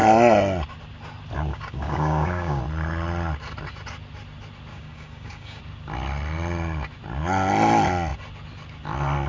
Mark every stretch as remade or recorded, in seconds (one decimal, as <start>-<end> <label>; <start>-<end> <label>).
0.0-1.5 recorded; 1.5-2.6 remade; 2.6-4.7 recorded; 4.7-5.6 remade; 5.6-9.3 recorded